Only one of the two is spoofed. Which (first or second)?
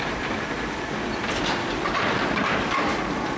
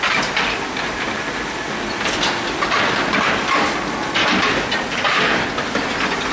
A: first